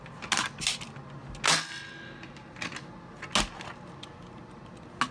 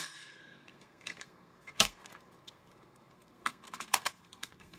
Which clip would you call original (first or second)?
first